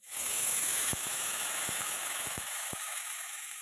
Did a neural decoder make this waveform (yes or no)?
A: yes